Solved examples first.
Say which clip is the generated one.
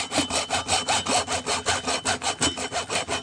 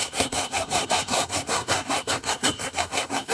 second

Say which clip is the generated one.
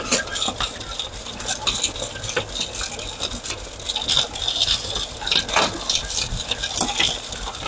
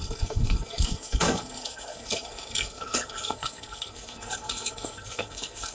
second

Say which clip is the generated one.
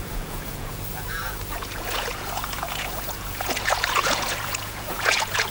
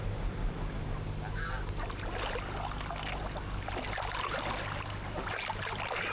first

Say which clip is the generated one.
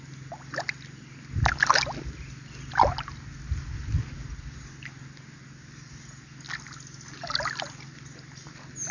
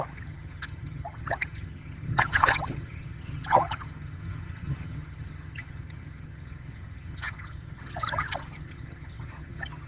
second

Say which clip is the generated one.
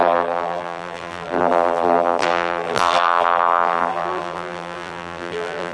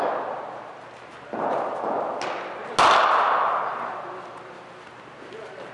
first